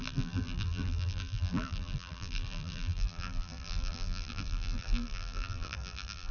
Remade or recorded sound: remade